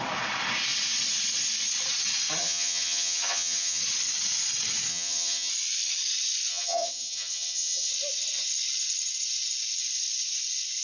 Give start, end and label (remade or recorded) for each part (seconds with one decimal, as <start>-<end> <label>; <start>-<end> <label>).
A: 0.0-2.4 recorded; 2.4-3.8 remade; 3.8-4.9 recorded; 4.9-5.5 remade; 5.5-6.5 recorded; 6.5-7.9 remade; 7.9-10.8 recorded